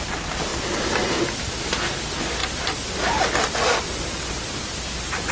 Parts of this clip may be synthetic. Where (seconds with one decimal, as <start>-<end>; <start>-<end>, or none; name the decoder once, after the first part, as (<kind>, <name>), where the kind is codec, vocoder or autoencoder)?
none